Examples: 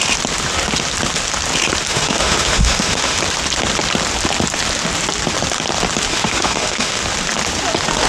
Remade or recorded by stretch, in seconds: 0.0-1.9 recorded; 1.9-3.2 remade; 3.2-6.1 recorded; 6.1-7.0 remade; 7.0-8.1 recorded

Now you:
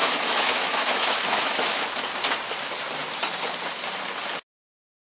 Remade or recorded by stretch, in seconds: 0.0-1.9 remade; 1.9-5.0 recorded

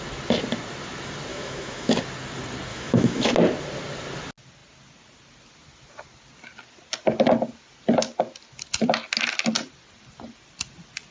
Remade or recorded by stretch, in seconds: 0.0-1.3 recorded; 1.3-2.0 remade; 2.0-2.7 recorded; 2.7-3.3 remade; 3.3-11.1 recorded